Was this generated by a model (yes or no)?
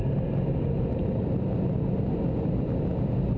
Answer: no